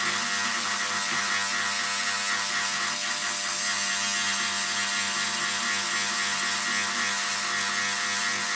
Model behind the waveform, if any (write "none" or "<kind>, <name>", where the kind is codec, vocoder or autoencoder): none